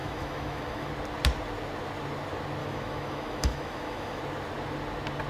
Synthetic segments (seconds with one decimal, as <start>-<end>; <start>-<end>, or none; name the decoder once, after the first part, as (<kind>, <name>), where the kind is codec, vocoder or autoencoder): 0.0-0.9 (autoencoder, DAC-VAE); 2.6-4.2